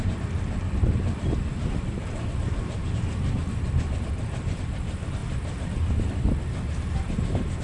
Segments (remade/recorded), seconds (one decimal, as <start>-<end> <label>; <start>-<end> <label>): 0.0-2.4 remade; 2.4-3.7 recorded; 3.7-5.2 remade; 5.2-7.6 recorded

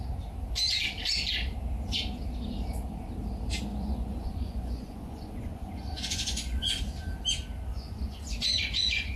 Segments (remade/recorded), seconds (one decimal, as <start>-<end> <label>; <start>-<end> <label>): 0.0-3.7 recorded; 3.7-6.8 remade; 6.8-7.7 recorded; 7.7-9.2 remade

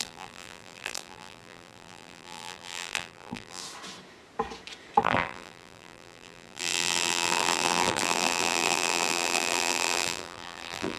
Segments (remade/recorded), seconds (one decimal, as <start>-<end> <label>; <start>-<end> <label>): 0.0-3.6 remade; 3.6-5.0 recorded; 5.0-11.0 remade

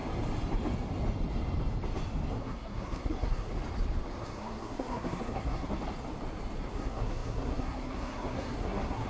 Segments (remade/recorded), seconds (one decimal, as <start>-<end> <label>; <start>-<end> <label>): 0.0-2.3 recorded; 2.3-3.5 remade; 3.5-4.2 recorded; 4.2-5.7 remade; 5.7-6.7 recorded; 6.7-9.1 remade

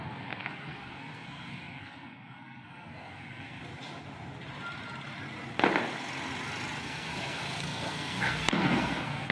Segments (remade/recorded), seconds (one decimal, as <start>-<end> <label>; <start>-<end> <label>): 0.0-3.6 remade; 3.6-6.8 recorded; 6.8-9.3 remade

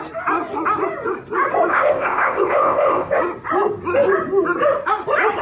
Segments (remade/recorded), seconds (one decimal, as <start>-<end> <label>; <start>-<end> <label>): 0.0-1.7 recorded; 1.7-3.2 remade; 3.2-5.4 recorded

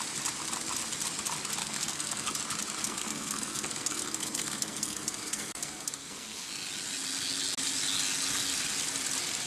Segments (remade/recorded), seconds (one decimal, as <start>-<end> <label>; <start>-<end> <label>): 0.0-1.6 recorded; 1.6-2.3 remade; 2.3-2.8 recorded; 2.8-6.5 remade; 6.5-9.5 recorded